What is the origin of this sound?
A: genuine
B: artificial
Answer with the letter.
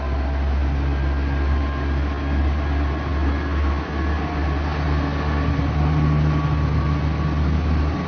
A